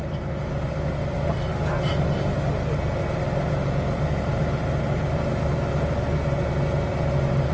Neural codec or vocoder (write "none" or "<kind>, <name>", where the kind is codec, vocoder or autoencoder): none